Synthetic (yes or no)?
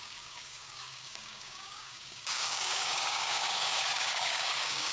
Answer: yes